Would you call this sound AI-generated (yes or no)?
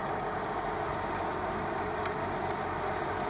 no